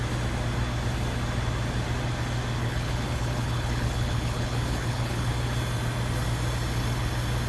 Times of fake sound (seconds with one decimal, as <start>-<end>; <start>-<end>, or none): 2.6-5.3